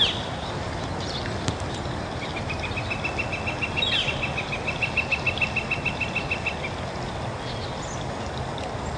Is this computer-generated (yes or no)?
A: no